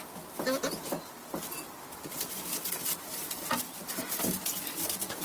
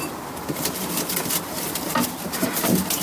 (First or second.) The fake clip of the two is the second